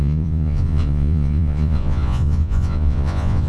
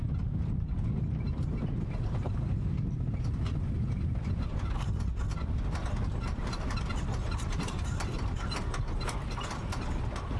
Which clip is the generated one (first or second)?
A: first